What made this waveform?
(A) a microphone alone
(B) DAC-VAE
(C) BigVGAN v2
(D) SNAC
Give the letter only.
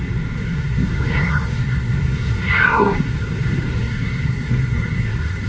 D